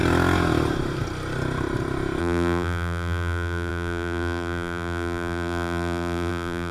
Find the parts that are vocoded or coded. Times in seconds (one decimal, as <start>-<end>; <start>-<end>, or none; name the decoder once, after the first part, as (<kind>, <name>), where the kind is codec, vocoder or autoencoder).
2.2-6.7 (vocoder, BigVGAN v2)